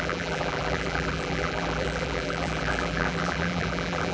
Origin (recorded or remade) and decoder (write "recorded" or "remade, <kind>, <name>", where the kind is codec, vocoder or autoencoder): remade, vocoder, BigVGAN v2